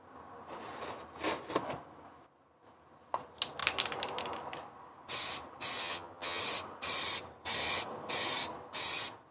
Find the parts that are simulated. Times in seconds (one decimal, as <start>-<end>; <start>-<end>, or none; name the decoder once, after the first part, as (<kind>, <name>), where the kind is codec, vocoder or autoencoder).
5.8-6.4 (vocoder, HiFi-GAN)